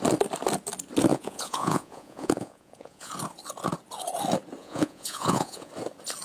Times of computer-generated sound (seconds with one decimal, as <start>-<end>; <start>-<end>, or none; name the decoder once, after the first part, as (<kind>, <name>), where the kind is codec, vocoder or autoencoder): 1.1-3.1 (vocoder, Vocos); 4.6-5.7